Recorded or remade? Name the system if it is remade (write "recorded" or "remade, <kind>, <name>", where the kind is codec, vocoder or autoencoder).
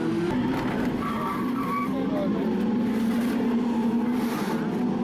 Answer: recorded